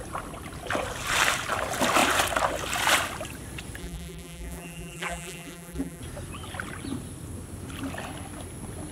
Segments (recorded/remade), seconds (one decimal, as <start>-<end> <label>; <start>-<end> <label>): 0.0-3.8 recorded; 3.8-6.0 remade; 6.0-8.9 recorded